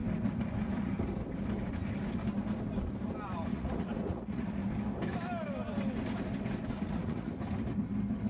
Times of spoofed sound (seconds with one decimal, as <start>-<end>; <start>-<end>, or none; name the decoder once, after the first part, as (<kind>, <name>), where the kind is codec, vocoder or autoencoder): 3.5-4.6 (vocoder, Vocos); 6.8-7.3